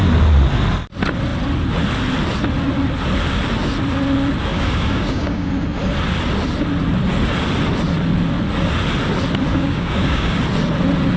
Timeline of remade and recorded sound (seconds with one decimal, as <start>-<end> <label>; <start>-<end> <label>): 0.0-4.5 recorded; 4.5-5.5 remade; 5.5-9.5 recorded; 9.5-10.4 remade; 10.4-11.2 recorded